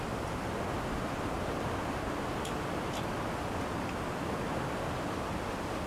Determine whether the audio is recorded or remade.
recorded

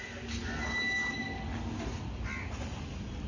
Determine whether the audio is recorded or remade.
recorded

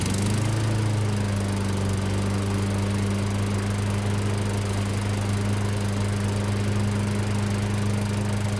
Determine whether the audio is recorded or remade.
recorded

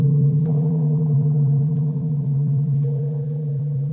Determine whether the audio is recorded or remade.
remade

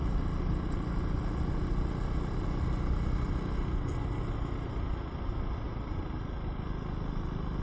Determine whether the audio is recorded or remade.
recorded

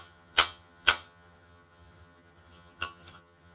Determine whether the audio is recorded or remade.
remade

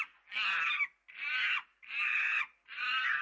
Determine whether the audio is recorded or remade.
recorded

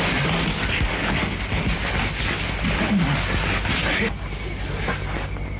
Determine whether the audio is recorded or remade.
recorded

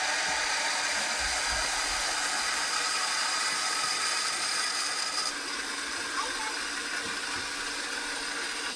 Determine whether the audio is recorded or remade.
recorded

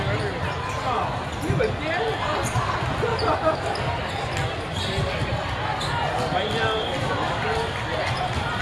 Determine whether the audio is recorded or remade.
recorded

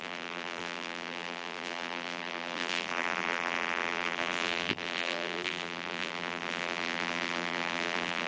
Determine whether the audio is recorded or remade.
remade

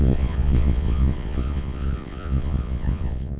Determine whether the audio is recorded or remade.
remade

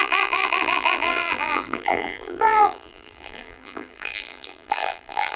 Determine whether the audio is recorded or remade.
remade